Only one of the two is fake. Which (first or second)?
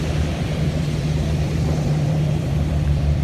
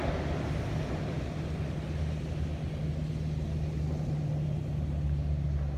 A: first